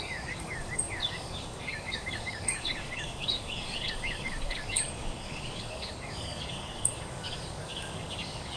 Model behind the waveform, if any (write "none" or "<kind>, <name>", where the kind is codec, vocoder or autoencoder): codec, DAC